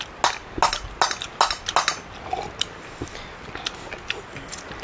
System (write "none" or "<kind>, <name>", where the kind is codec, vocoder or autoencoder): none